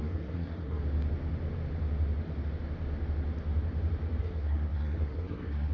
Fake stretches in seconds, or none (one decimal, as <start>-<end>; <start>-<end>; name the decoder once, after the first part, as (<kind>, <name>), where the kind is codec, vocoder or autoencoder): 0.0-0.8 (codec, SNAC); 4.2-5.7